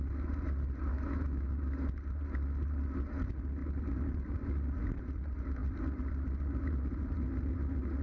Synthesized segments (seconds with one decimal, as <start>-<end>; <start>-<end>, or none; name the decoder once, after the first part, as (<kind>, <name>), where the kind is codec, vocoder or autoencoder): 0.9-1.5 (autoencoder, DAC-VAE)